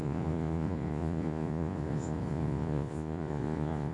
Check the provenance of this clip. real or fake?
fake